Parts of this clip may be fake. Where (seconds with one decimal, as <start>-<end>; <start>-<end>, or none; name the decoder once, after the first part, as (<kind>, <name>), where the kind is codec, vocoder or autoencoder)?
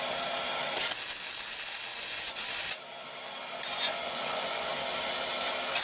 1.9-2.4 (vocoder, Vocos); 3.7-4.7